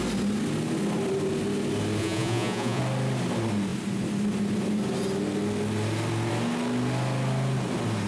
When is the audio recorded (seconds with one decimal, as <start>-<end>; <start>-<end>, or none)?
0.0-2.0; 2.8-8.1

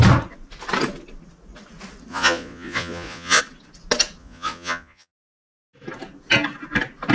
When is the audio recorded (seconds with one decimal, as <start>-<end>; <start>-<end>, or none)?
0.0-2.1; 3.4-4.2; 5.1-7.1

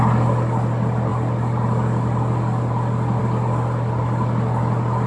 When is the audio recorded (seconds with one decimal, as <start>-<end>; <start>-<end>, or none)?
0.0-5.1

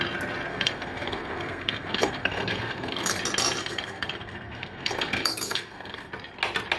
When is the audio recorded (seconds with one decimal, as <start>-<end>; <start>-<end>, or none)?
0.0-0.5; 3.2-3.6; 6.1-6.8